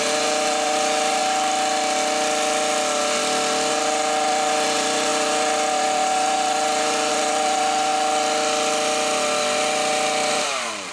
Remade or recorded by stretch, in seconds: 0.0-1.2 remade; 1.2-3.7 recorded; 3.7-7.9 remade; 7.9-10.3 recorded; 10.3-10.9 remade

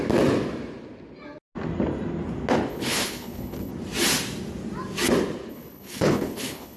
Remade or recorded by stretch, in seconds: 0.0-2.7 recorded; 2.7-3.7 remade; 3.7-5.5 recorded; 5.5-6.8 remade

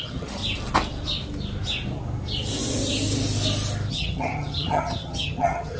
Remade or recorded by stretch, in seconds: 0.0-0.4 remade; 0.4-3.9 recorded; 3.9-5.8 remade